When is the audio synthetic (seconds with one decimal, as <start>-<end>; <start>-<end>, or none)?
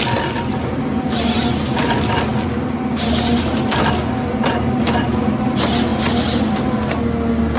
none